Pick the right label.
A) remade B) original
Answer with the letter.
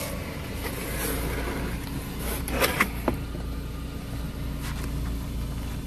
B